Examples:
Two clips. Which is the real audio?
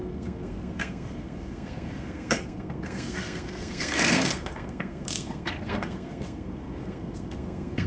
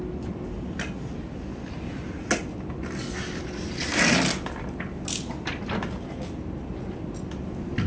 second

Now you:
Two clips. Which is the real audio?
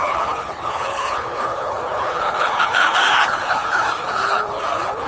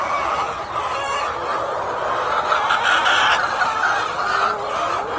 second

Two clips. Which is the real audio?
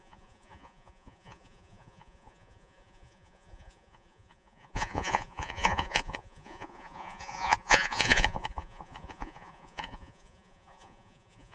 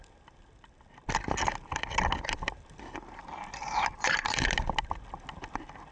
second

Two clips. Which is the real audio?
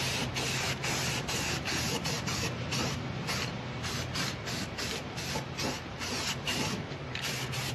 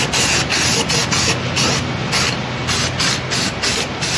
second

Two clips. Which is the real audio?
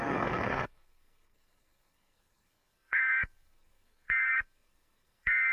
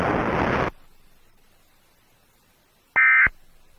second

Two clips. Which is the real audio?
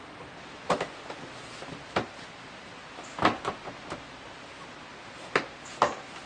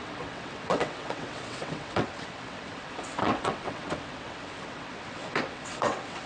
first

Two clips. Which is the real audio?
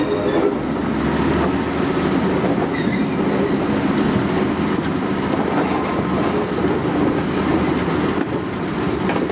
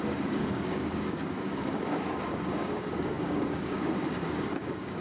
first